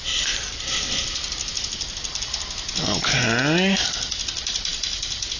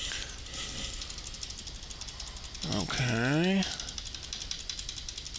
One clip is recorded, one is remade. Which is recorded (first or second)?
second